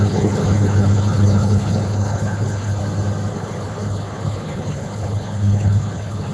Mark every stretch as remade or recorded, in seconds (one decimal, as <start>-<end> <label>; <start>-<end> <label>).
0.0-2.8 remade; 2.8-3.3 recorded; 3.3-6.3 remade